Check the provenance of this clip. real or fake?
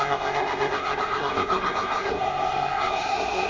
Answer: fake